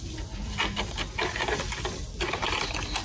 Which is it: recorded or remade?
recorded